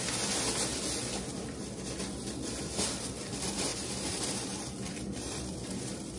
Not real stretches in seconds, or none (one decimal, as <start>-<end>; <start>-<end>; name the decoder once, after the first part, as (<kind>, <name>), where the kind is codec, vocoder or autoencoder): 0.0-0.7 (vocoder, BigVGAN v2); 2.5-6.2